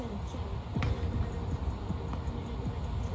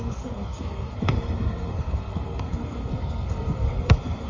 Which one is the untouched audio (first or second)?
first